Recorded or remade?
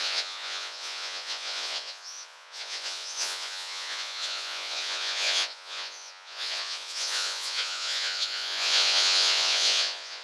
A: remade